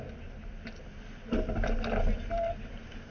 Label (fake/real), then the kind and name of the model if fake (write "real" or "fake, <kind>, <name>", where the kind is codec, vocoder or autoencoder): real